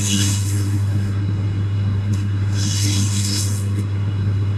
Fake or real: fake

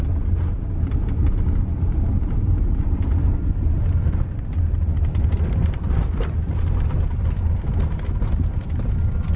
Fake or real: real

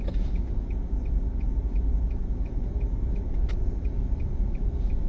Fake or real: real